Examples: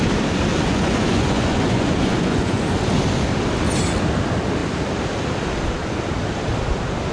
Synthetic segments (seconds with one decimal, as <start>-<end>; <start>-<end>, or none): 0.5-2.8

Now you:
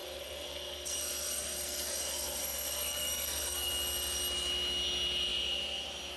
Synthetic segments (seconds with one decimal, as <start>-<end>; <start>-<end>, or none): 0.0-3.7

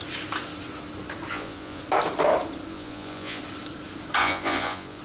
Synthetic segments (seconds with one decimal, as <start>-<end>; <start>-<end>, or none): 1.3-1.8; 2.7-3.4; 4.2-5.0